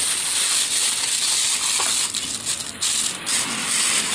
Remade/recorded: recorded